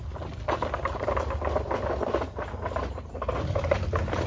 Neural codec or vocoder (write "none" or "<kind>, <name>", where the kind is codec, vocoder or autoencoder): none